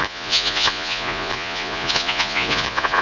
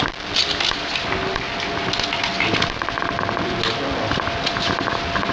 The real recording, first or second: second